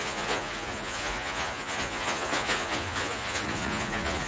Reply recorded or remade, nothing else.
remade